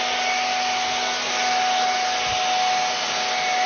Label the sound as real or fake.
real